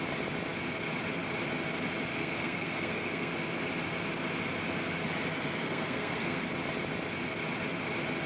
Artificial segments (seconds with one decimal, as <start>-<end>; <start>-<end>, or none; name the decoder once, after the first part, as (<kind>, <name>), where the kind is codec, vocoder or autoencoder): 2.1-3.3 (codec, SNAC); 5.6-6.4